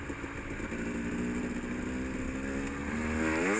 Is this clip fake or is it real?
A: real